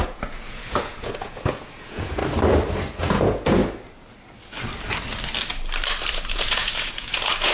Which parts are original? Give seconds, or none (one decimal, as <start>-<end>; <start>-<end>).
2.2-3.1; 3.6-6.1